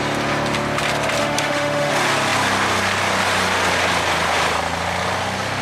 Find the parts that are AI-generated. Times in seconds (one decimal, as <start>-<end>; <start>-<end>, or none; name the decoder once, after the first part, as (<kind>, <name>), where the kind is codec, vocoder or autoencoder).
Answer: 1.2-1.9 (autoencoder, DAC-VAE)